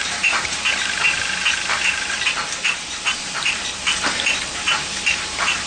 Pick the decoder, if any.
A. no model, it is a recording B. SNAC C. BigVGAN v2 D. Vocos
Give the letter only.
C